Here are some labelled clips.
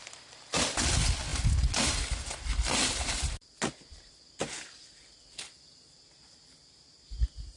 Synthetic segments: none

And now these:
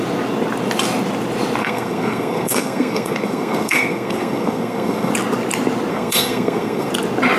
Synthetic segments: 1.6-5.1; 5.9-6.9